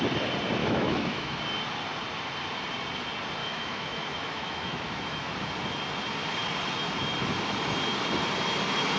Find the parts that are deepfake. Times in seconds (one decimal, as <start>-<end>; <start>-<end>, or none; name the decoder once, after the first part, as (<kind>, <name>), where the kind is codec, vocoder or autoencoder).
0.6-1.4 (autoencoder, DAC-VAE); 3.4-5.3